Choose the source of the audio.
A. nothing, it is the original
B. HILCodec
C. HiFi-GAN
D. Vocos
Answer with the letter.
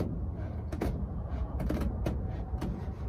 D